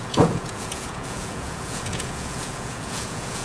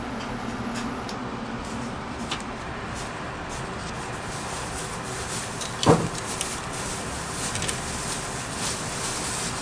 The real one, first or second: second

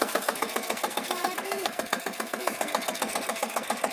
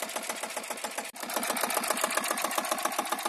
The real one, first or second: second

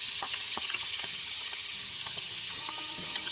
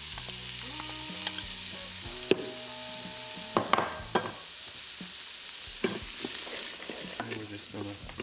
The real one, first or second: second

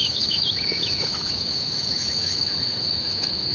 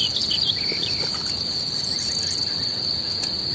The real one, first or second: second